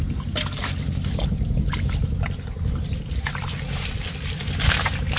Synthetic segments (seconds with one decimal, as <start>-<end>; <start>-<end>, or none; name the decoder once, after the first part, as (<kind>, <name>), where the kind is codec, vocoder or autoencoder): none